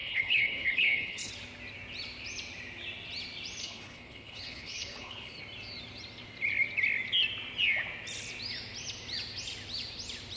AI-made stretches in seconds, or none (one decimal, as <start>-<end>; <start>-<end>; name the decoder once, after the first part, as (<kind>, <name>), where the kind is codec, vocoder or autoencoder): 0.0-1.3 (codec, HILCodec); 3.6-5.4